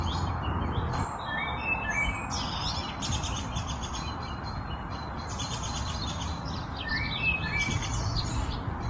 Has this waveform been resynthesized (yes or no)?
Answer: yes